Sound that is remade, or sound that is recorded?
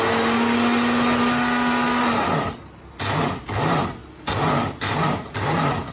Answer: recorded